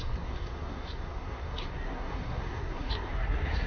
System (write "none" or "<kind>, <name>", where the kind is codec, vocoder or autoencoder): codec, SNAC